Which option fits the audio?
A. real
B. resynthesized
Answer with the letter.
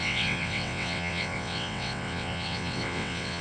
B